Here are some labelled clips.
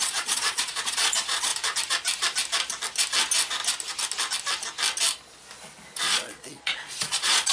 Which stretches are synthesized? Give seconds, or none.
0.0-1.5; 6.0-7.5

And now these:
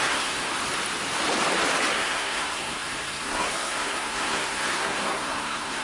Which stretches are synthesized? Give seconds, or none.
0.0-0.5; 1.9-5.8

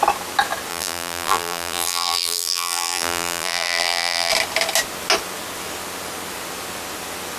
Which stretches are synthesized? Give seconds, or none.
0.7-4.3

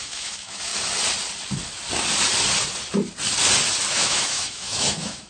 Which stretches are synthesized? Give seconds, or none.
0.0-0.7; 3.9-5.3

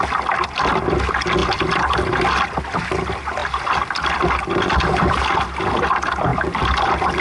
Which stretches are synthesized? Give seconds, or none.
none

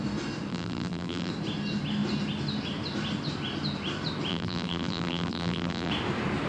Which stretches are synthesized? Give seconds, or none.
0.5-1.3; 4.3-5.9